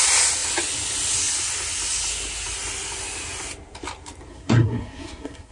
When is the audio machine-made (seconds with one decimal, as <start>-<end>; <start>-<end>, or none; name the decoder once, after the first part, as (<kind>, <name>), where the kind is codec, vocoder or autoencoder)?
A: 4.3-5.5 (codec, SNAC)